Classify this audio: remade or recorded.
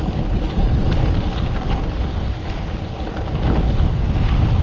recorded